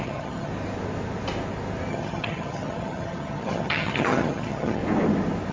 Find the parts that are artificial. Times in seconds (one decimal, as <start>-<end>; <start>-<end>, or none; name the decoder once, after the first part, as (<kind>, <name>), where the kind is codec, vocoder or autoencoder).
0.0-0.5 (vocoder, HiFi-GAN); 1.9-4.8

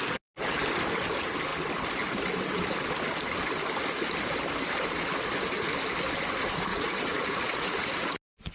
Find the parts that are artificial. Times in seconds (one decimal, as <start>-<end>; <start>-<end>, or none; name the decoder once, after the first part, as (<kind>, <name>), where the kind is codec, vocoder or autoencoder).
6.7-8.1 (vocoder, Vocos)

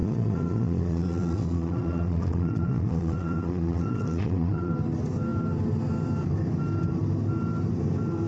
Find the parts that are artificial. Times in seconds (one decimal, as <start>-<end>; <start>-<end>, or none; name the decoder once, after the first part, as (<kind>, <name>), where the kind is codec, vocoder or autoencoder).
0.0-4.7 (vocoder, Vocos)

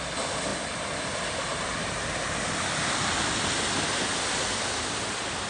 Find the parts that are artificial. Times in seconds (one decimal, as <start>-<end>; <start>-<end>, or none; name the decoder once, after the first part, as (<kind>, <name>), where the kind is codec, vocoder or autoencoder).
none

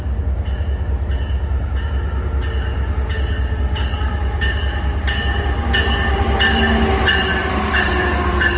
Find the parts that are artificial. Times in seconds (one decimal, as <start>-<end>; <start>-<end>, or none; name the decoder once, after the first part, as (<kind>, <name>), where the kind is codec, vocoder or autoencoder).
none

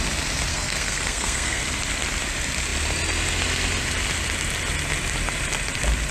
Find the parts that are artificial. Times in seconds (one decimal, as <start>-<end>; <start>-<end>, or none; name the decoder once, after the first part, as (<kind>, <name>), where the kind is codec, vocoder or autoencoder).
0.5-1.6 (codec, SNAC)